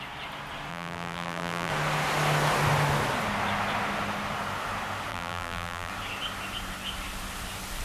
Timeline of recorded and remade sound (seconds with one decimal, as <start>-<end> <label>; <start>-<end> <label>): 0.0-0.7 recorded; 0.7-1.7 remade; 1.7-5.1 recorded; 5.1-5.9 remade; 5.9-7.8 recorded